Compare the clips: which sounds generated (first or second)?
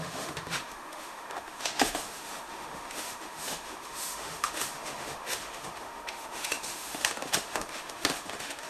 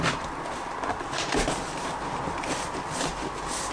first